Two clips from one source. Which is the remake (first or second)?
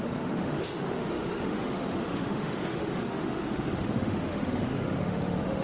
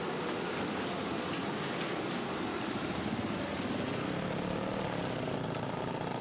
first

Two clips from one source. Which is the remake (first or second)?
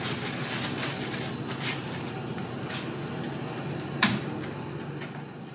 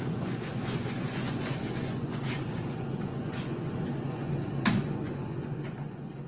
second